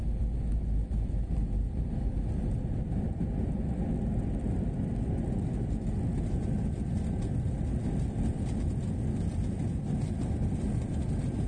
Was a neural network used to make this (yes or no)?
no